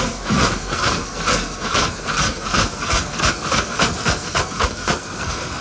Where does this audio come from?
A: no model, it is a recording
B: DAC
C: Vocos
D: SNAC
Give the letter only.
D